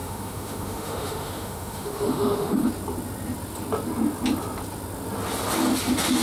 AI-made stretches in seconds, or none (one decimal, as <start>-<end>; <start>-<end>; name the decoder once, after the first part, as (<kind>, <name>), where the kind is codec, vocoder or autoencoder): 0.0-2.7 (autoencoder, DAC-VAE)